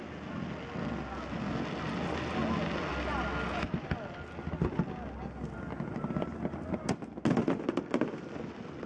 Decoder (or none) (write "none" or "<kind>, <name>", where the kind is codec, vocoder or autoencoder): none